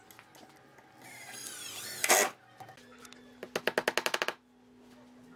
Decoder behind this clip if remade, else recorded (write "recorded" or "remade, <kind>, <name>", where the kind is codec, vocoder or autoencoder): recorded